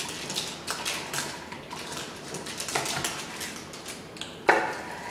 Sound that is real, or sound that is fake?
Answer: real